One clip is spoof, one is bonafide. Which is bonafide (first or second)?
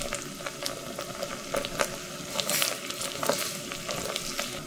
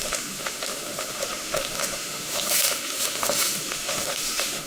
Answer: first